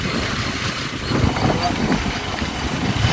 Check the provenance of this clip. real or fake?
real